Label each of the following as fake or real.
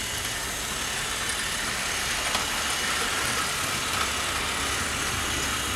real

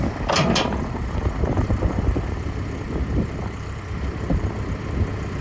fake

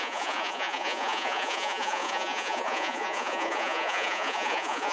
fake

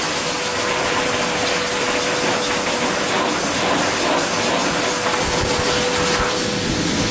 real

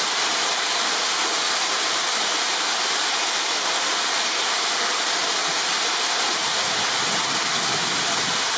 real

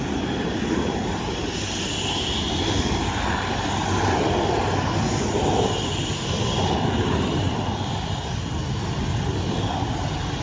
real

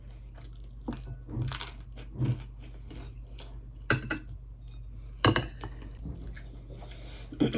real